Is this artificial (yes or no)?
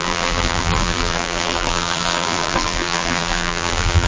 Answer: yes